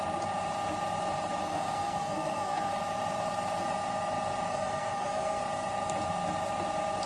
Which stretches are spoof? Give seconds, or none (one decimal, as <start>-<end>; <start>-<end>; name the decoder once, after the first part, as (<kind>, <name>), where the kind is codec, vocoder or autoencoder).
1.5-2.7 (codec, SNAC); 4.5-5.4